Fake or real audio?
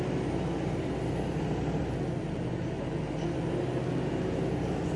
real